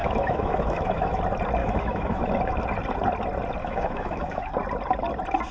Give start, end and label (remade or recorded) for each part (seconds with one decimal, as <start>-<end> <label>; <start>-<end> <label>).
0.0-1.2 remade; 1.2-1.6 recorded; 1.6-2.3 remade; 2.3-3.6 recorded; 3.6-4.5 remade; 4.5-5.5 recorded